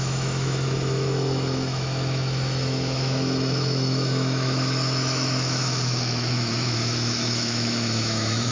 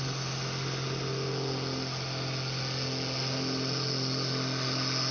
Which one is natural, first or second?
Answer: second